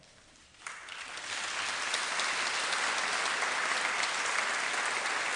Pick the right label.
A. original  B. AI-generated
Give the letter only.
A